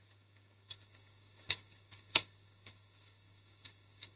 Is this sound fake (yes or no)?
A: yes